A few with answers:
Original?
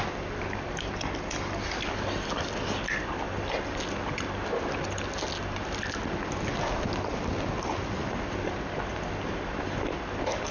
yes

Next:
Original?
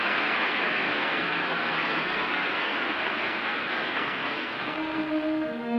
no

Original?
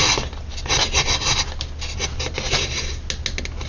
yes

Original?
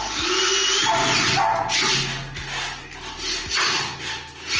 yes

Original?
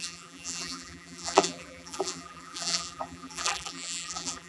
no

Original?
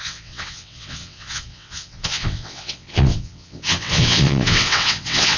no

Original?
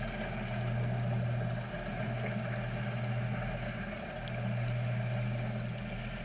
yes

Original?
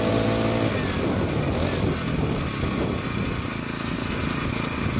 yes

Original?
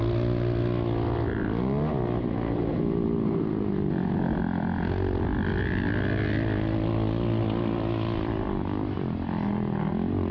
yes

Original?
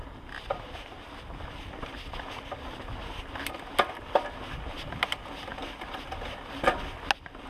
yes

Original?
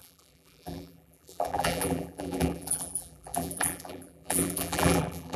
no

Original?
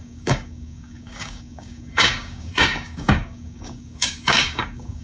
no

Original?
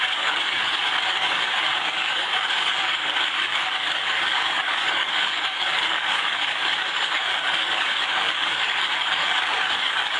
no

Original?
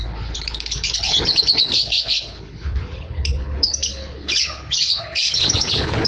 no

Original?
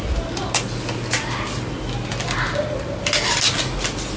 yes